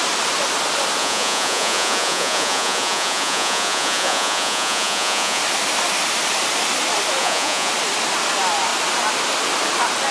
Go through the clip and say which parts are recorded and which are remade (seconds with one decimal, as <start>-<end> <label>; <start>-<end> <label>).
0.0-1.0 recorded; 1.0-5.4 remade; 5.4-7.2 recorded; 7.2-7.7 remade; 7.7-10.1 recorded